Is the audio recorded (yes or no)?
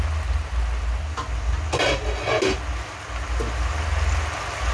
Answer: yes